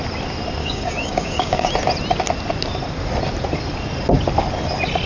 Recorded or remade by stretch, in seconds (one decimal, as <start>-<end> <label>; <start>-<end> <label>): 0.0-0.6 recorded; 0.6-1.7 remade; 1.7-5.1 recorded